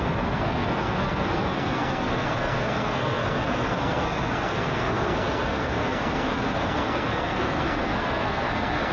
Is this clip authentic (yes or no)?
no